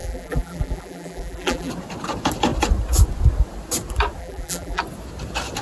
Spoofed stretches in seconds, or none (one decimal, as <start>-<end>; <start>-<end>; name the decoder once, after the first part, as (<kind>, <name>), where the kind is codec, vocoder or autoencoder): 0.0-1.7 (vocoder, BigVGAN v2); 4.2-4.8